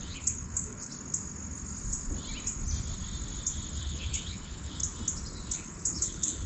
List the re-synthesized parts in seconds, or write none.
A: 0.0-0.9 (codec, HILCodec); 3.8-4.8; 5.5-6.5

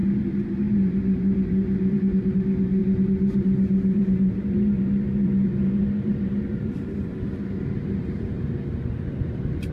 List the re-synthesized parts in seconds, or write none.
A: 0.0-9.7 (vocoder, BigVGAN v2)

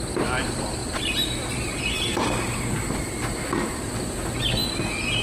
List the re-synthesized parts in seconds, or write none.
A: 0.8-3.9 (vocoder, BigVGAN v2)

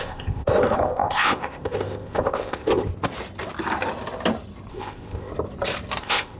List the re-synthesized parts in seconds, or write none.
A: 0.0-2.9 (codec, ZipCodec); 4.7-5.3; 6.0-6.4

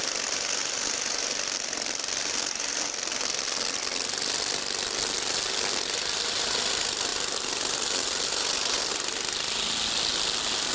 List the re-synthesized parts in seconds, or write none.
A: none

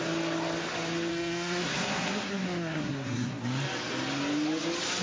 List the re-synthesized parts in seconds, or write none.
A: 1.1-3.4 (codec, SNAC)

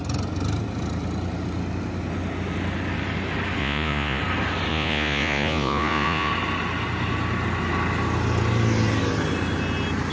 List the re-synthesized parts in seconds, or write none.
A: 3.6-4.2 (vocoder, Vocos); 4.7-6.3

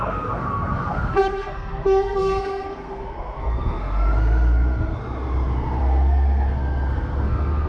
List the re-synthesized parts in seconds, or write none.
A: 0.0-5.0 (codec, SNAC); 5.8-7.7